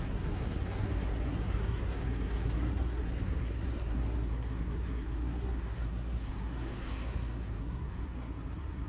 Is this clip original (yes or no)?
no